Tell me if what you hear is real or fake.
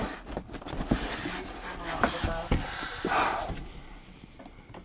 real